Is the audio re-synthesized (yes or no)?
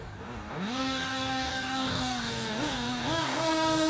yes